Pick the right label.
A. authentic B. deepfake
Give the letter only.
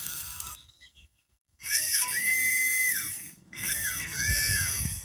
B